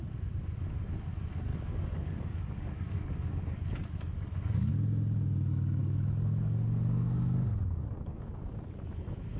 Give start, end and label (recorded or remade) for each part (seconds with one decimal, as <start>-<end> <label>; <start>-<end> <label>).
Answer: 0.0-1.5 recorded; 1.5-4.7 remade; 4.7-5.8 recorded; 5.8-8.5 remade; 8.5-9.4 recorded